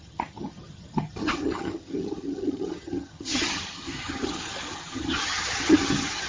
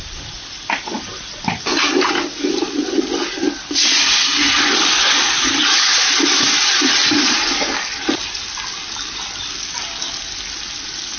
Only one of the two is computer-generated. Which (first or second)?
first